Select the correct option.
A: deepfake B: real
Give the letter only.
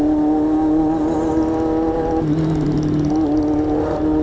B